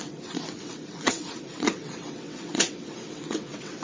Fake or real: fake